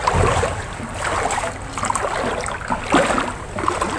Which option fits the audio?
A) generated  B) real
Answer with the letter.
B